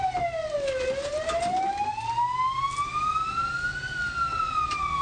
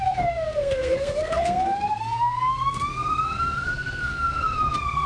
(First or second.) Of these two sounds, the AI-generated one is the second